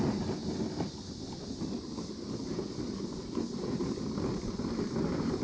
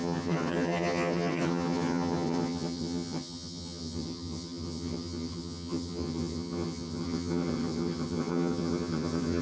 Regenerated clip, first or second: second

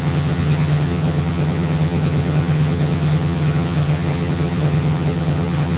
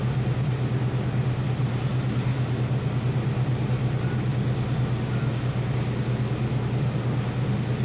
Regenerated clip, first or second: first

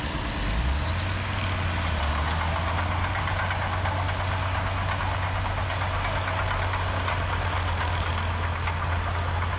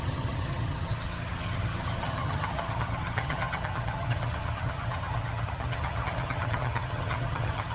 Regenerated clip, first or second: second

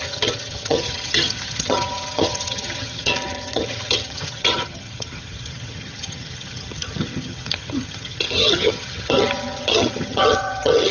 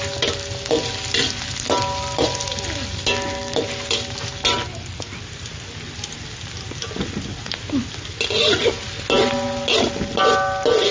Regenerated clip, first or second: first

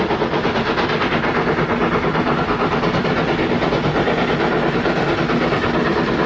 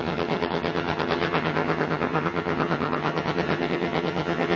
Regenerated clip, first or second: second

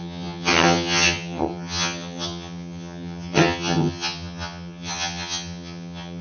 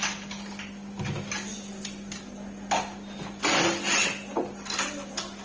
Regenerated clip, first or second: first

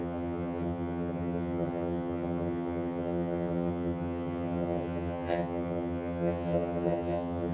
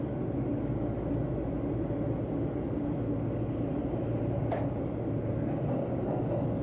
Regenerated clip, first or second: first